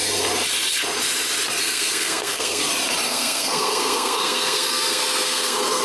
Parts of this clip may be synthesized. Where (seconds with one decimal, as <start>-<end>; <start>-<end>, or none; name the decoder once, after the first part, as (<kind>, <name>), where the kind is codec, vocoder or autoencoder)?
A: 1.6-2.6 (codec, SNAC); 3.1-5.8